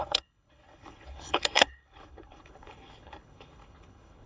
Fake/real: fake